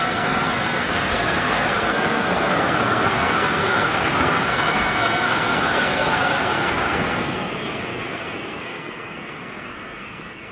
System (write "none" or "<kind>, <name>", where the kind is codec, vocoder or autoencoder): codec, SNAC